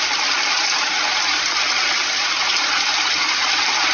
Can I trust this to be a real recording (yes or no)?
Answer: no